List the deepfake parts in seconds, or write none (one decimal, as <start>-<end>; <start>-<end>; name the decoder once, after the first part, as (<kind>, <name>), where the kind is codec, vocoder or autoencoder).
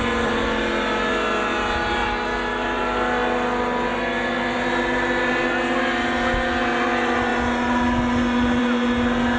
none